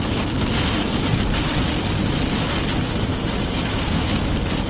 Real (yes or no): yes